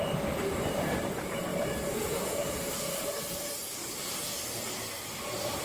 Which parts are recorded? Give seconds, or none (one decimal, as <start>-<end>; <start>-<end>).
0.0-1.5; 2.8-3.8